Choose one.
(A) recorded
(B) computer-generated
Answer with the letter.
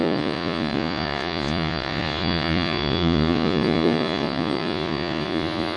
B